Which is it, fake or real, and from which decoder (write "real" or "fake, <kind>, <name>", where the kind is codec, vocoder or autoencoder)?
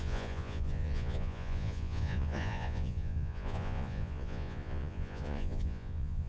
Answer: fake, vocoder, Vocos